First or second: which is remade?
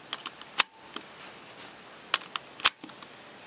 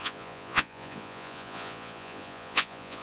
second